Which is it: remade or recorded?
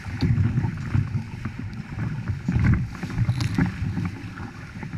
recorded